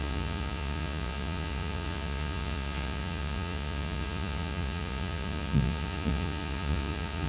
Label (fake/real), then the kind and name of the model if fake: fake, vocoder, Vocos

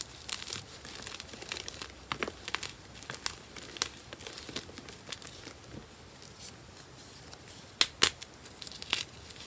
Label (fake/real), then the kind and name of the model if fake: real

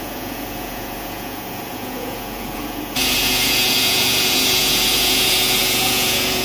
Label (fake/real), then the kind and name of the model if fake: fake, vocoder, Vocos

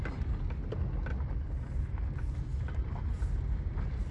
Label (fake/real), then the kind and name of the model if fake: real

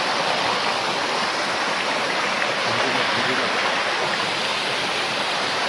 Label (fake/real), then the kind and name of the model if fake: real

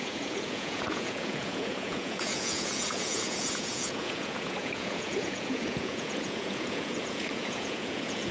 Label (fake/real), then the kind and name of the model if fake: fake, vocoder, Vocos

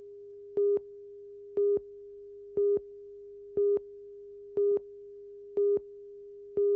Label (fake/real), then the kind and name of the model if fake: real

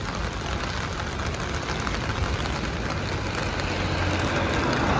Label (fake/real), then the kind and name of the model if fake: real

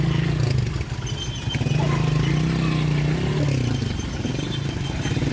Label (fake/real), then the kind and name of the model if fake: real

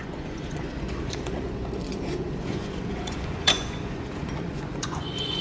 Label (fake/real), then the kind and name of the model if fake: fake, vocoder, Vocos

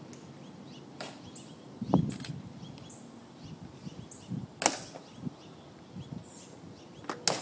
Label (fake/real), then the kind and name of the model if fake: real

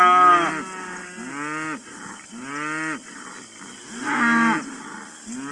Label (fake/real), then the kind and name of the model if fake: real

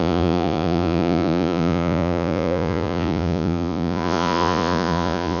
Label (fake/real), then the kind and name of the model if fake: fake, vocoder, Vocos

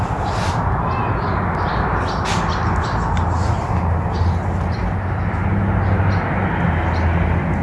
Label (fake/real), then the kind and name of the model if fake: real